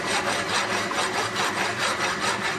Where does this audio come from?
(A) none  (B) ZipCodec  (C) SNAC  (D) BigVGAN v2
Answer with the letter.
D